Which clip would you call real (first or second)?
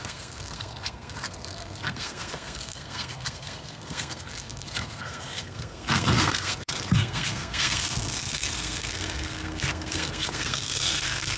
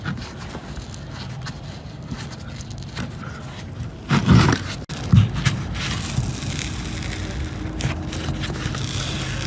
second